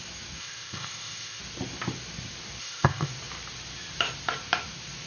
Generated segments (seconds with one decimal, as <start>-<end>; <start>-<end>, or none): 0.4-1.4; 2.6-3.1